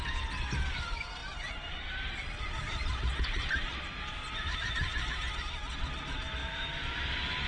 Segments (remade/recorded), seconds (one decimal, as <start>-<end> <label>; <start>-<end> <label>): 0.0-1.2 recorded; 1.2-5.3 remade; 5.3-7.5 recorded